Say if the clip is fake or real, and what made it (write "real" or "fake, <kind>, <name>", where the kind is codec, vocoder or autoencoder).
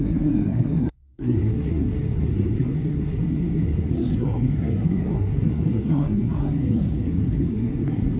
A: fake, codec, SNAC